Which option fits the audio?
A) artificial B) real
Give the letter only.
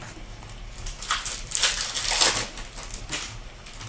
B